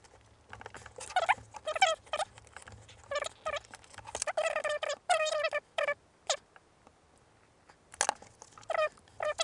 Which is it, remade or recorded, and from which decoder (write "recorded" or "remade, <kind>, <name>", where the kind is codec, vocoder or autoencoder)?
recorded